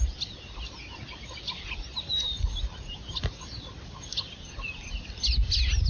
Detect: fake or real real